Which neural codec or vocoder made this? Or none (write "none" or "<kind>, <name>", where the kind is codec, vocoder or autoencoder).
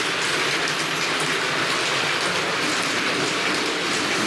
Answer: none